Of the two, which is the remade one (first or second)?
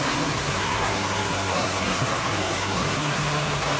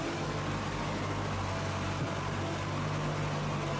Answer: first